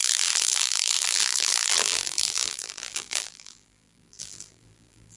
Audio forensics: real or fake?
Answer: fake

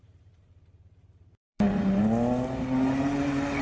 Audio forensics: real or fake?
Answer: fake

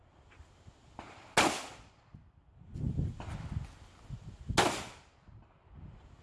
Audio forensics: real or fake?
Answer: real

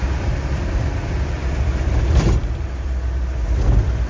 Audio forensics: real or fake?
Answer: fake